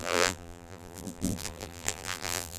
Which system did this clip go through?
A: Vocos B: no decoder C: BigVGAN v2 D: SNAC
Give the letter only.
C